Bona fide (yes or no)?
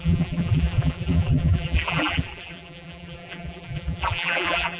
no